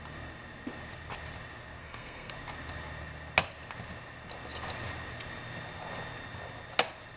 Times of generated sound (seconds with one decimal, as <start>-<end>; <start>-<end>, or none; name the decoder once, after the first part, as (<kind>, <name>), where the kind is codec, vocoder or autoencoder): 1.8-2.3 (codec, SNAC)